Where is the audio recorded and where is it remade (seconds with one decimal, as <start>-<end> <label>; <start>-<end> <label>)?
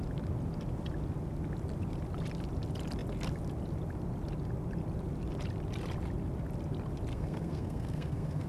0.0-7.1 recorded; 7.1-8.5 remade